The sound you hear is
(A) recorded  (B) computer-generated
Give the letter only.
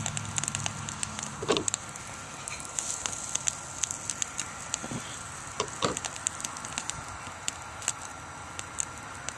A